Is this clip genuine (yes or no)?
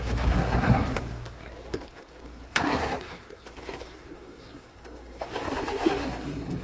no